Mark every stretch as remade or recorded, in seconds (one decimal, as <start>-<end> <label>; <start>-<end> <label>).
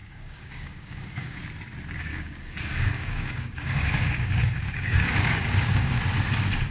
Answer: 0.0-1.4 remade; 1.4-2.1 recorded; 2.1-6.0 remade; 6.0-6.7 recorded